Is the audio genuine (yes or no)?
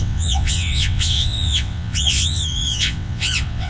no